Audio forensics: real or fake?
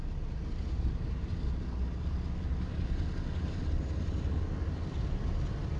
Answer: real